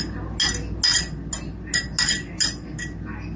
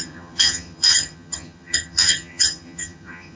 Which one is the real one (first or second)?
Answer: first